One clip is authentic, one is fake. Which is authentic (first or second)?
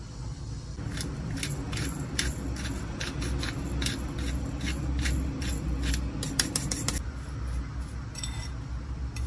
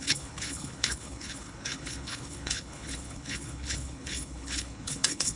first